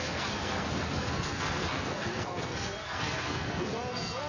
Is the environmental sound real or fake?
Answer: fake